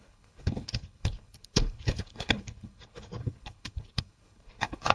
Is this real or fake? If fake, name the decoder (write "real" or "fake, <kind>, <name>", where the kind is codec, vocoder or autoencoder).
fake, codec, HILCodec